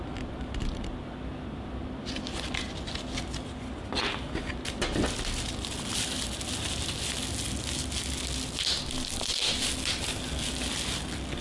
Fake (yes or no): no